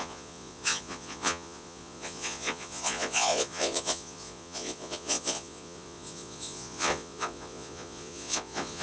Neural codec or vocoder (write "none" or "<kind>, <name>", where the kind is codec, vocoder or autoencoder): vocoder, Vocos